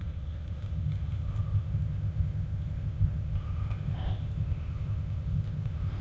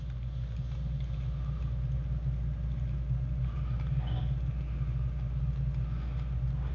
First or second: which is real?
second